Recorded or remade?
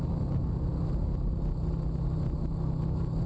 recorded